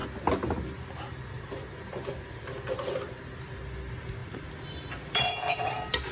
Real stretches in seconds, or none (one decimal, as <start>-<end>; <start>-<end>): 0.0-6.1